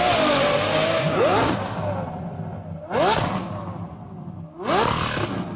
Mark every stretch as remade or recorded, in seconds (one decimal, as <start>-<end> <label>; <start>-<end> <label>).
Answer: 0.0-5.6 recorded